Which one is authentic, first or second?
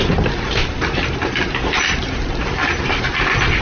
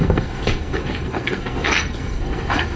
first